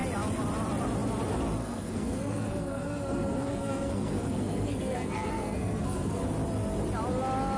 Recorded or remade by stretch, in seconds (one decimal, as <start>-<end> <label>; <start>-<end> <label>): 0.0-1.6 recorded; 1.6-6.2 remade; 6.2-7.6 recorded